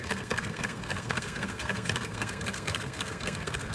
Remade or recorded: remade